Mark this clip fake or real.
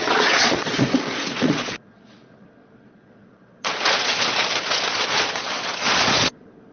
fake